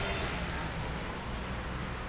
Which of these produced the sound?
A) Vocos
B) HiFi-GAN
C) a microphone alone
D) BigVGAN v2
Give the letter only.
C